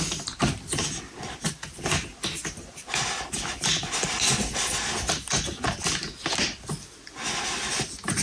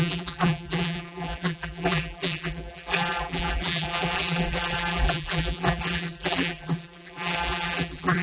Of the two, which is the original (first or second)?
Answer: first